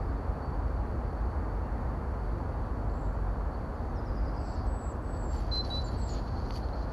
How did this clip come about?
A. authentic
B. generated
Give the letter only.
A